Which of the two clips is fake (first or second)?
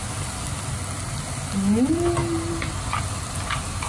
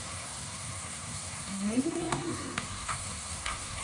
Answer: second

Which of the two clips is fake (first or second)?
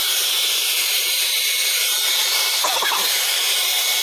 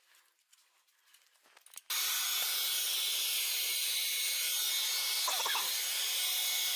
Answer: first